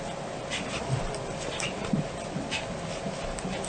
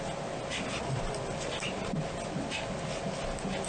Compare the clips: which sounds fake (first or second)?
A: first